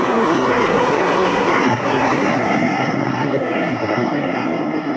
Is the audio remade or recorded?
remade